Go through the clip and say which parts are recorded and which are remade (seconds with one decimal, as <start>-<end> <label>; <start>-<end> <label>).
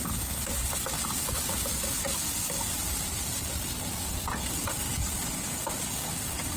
0.0-6.6 recorded